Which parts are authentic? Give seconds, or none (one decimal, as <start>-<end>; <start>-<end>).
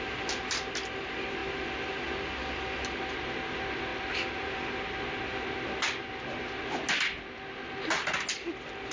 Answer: 0.0-8.9